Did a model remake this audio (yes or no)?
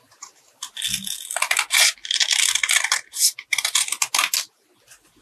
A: no